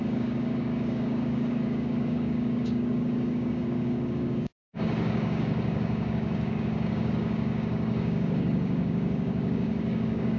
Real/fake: fake